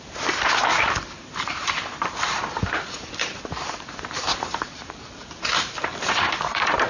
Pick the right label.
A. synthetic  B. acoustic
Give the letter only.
A